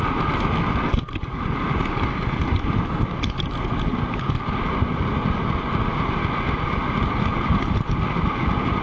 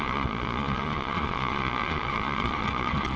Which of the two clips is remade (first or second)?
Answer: second